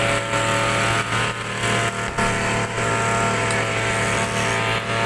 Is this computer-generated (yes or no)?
no